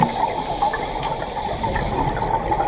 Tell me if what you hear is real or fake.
real